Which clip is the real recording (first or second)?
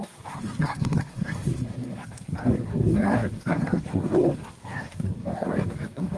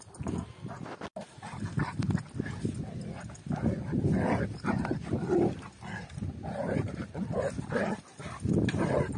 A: second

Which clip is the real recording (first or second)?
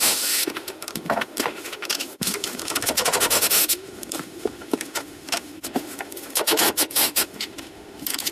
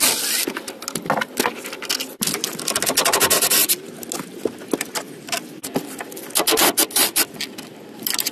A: second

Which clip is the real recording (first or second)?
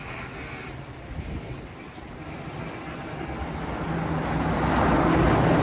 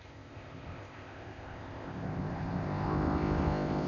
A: first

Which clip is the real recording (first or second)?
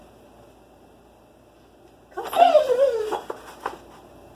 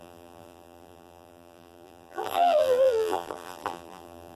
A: first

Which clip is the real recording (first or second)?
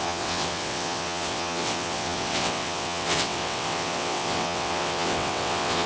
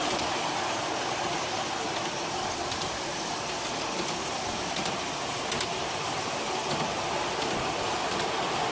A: second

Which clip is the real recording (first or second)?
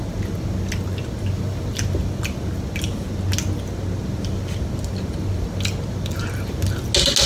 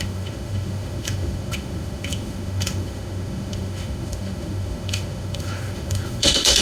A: first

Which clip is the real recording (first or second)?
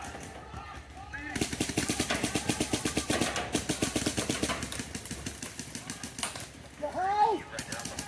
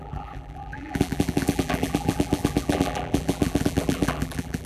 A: first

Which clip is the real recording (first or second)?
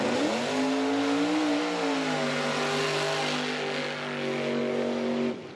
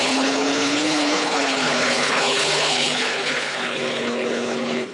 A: first